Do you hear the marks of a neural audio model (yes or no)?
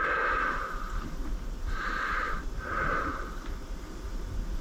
no